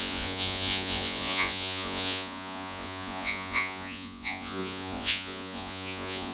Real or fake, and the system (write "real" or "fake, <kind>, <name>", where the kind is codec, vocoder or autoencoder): fake, vocoder, Vocos